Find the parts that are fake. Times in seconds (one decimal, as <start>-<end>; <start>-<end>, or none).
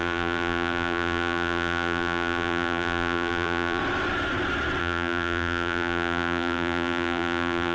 0.0-3.8; 4.8-7.7